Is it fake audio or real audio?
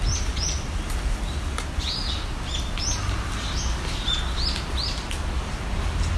real